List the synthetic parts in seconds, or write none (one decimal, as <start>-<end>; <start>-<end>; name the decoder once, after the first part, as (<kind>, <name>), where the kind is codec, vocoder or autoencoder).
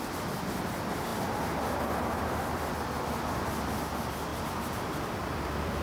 4.3-5.8 (vocoder, BigVGAN v2)